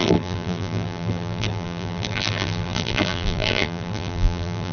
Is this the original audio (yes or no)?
no